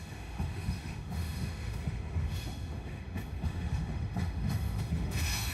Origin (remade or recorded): remade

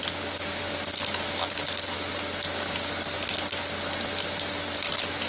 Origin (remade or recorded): recorded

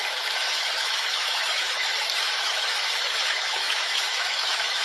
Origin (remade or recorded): remade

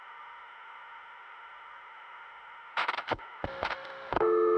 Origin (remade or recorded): remade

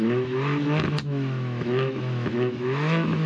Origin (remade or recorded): remade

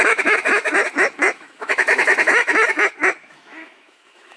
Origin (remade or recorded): remade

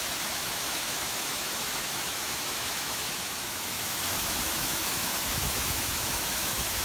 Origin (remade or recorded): remade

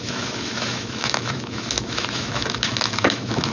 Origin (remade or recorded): remade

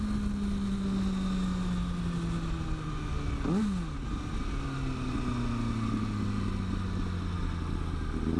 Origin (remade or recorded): recorded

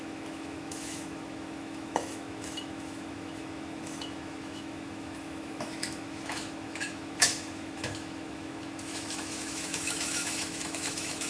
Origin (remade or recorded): remade